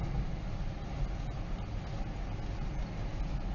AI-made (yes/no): no